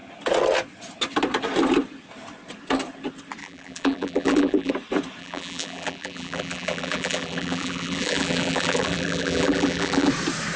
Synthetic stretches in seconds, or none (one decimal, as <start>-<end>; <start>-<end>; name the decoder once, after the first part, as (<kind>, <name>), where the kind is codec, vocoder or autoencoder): 3.4-4.7 (vocoder, BigVGAN v2); 5.2-10.1